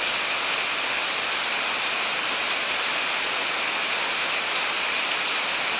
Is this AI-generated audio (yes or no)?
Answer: no